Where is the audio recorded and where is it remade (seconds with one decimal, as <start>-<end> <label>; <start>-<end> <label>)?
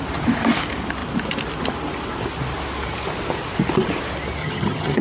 0.0-4.4 recorded; 4.4-5.0 remade